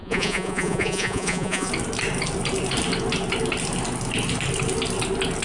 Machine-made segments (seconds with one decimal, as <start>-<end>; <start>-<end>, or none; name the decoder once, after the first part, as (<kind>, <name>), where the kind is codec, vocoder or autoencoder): 0.0-1.7 (vocoder, Vocos)

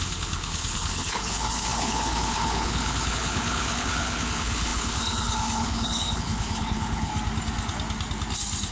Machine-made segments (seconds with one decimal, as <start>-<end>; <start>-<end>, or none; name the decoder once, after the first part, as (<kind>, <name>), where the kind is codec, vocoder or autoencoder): 0.0-7.1 (codec, HILCodec)

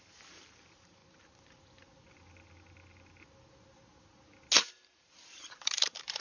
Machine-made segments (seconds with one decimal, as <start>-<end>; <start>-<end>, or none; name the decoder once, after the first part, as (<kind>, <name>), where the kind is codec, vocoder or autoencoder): 0.0-1.0 (vocoder, BigVGAN v2); 4.7-6.2

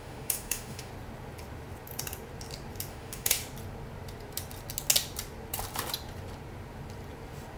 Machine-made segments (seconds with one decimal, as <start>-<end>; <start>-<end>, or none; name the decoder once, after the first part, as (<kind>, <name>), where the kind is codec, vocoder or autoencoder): 0.0-0.9 (autoencoder, DAC-VAE); 2.9-3.4

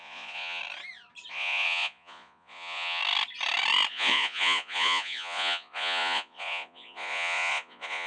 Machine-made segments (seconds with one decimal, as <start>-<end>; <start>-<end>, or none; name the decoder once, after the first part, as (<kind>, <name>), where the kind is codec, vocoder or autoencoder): 0.0-0.6 (vocoder, Vocos); 1.3-3.0; 3.9-8.1

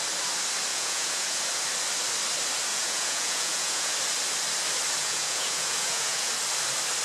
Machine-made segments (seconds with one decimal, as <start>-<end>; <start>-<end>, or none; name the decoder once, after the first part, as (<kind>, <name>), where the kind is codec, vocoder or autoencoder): 0.7-1.4 (vocoder, Vocos); 2.7-3.9; 5.0-6.3